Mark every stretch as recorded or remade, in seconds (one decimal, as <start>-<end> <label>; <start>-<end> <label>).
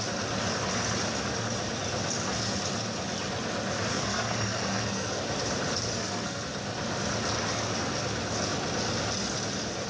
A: 0.0-3.9 recorded; 3.9-5.2 remade; 5.2-5.9 recorded; 5.9-6.4 remade; 6.4-9.9 recorded